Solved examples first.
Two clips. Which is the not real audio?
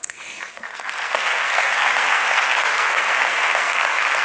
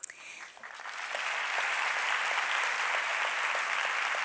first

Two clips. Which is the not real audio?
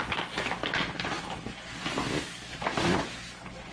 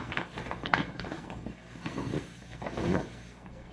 second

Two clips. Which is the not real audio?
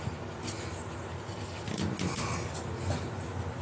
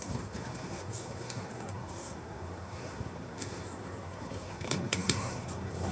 second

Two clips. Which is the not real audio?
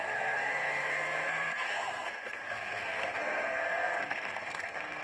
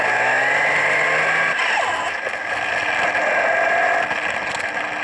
first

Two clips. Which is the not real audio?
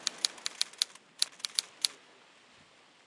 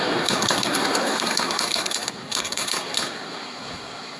second